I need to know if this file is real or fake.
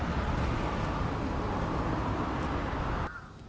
real